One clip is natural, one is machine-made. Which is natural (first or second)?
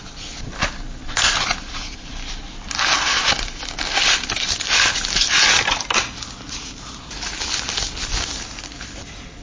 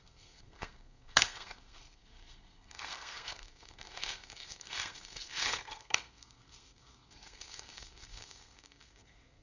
first